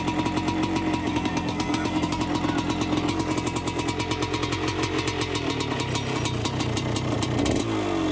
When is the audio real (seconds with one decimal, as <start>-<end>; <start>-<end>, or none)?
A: 0.0-1.0; 2.2-8.1